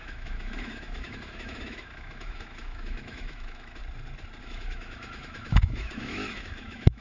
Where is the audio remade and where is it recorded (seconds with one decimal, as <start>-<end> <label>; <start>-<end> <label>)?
0.0-3.8 remade; 3.8-4.4 recorded; 4.4-7.0 remade